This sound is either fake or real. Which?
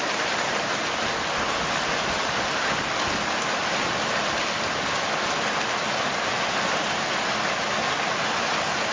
real